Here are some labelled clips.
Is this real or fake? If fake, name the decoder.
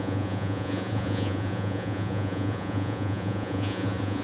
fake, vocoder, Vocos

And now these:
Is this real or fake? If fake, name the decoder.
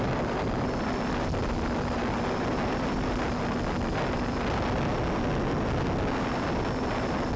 real